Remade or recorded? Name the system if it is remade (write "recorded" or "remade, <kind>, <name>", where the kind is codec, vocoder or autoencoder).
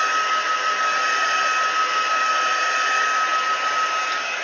recorded